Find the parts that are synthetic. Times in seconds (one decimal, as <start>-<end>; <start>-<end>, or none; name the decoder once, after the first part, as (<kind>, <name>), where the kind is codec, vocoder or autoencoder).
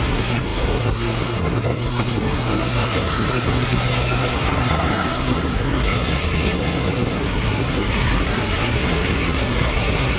0.0-10.2 (codec, SNAC)